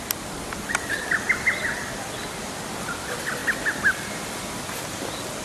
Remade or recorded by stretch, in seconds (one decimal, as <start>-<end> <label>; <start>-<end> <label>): 0.0-5.4 recorded